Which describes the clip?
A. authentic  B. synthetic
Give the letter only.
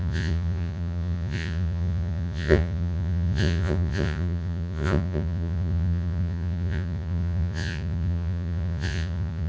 B